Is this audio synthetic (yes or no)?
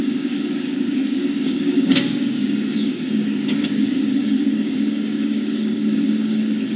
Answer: yes